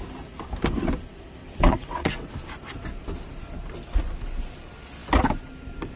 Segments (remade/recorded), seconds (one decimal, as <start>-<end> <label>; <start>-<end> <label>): 0.0-1.4 recorded; 1.4-2.3 remade; 2.3-6.0 recorded